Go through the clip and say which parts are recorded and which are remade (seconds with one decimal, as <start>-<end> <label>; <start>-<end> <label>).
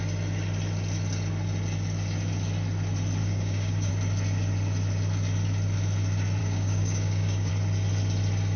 0.0-3.2 recorded; 3.2-3.9 remade; 3.9-6.4 recorded; 6.4-7.5 remade; 7.5-8.6 recorded